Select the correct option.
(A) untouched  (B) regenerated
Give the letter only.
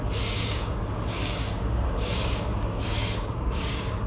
B